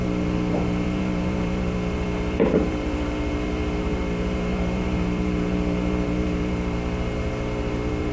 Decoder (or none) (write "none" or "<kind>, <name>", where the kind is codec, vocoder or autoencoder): vocoder, BigVGAN v2